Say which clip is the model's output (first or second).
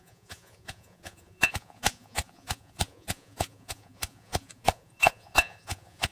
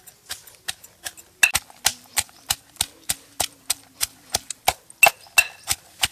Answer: first